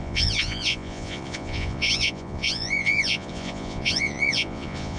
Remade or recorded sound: remade